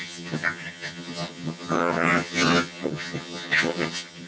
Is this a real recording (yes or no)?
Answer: no